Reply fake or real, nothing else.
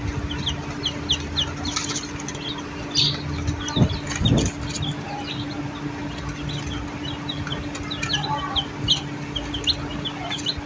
real